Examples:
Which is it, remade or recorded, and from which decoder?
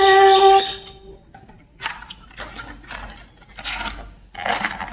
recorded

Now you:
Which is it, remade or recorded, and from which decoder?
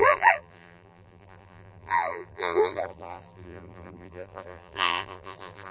remade, vocoder, BigVGAN v2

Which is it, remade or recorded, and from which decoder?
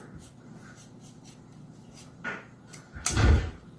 remade, vocoder, BigVGAN v2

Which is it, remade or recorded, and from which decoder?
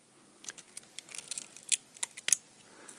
recorded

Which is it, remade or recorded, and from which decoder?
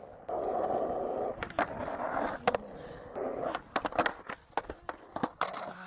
recorded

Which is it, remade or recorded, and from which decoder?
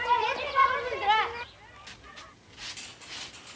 recorded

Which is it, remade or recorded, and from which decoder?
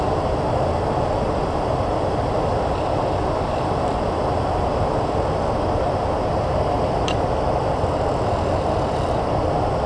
remade, vocoder, BigVGAN v2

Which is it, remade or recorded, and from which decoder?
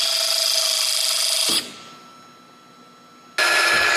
recorded